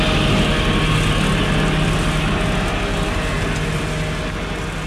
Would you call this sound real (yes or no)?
yes